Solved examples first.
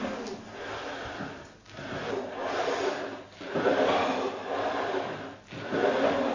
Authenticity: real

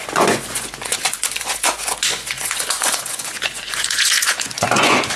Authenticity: fake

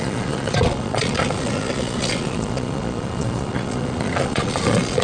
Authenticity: fake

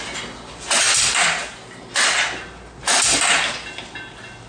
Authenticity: real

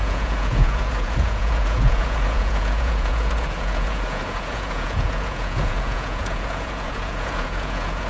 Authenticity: fake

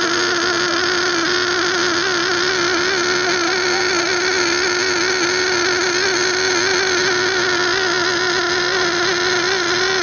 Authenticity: real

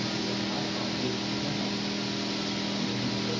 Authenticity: real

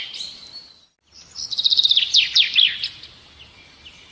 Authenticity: real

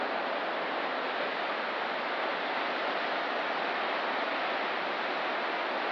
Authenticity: real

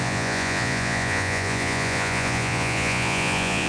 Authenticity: fake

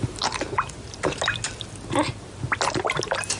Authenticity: real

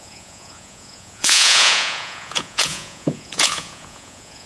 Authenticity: fake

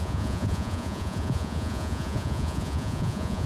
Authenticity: fake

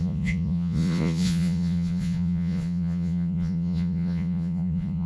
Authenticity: fake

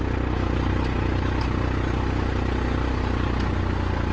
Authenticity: real